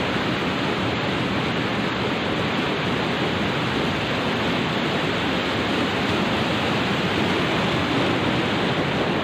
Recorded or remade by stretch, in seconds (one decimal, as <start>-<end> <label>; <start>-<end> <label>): 0.0-9.2 recorded